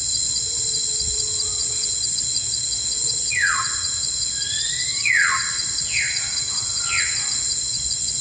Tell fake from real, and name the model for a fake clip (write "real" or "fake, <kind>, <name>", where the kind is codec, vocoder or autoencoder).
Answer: fake, vocoder, WaveNeXt